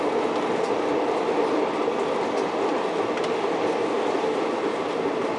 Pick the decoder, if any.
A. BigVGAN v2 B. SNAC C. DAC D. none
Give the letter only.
D